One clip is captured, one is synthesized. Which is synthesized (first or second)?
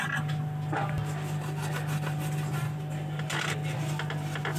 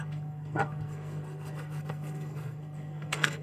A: second